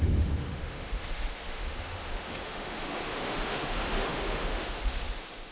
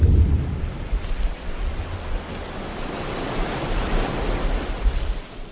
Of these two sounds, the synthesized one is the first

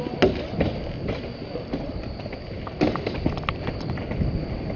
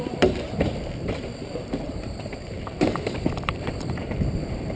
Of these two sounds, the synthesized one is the second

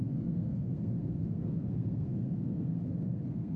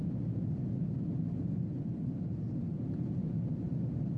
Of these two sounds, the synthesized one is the first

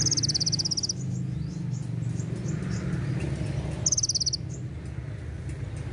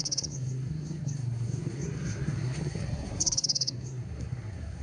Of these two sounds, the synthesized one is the second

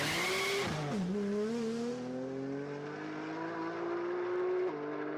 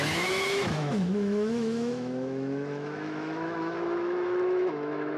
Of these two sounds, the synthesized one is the second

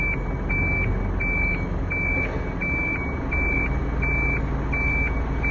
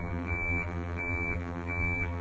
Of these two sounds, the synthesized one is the second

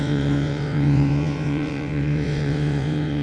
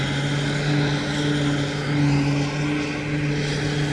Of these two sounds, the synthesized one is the first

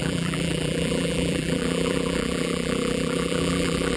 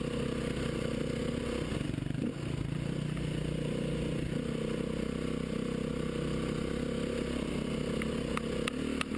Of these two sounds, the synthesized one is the first